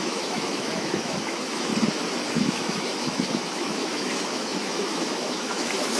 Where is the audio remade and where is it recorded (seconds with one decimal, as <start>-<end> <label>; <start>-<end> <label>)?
0.0-1.7 remade; 1.7-2.3 recorded; 2.3-6.0 remade